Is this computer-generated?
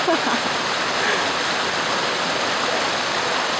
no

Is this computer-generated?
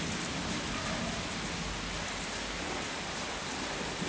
no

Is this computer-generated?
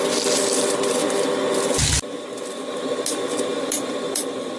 no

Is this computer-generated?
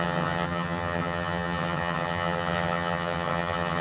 yes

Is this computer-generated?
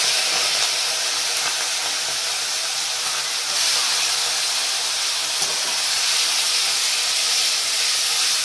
no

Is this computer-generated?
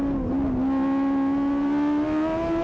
no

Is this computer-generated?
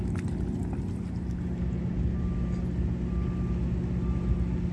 no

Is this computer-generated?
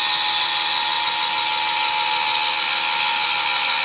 no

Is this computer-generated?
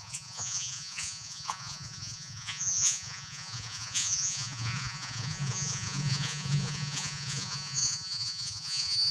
yes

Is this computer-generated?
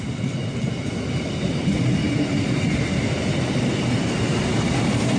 no